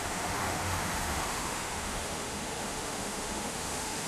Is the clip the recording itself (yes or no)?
no